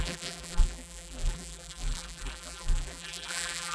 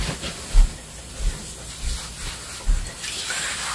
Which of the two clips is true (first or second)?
second